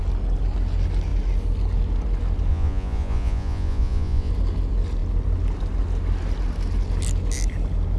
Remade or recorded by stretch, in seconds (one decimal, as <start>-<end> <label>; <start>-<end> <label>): 0.0-2.5 recorded; 2.5-4.3 remade; 4.3-8.0 recorded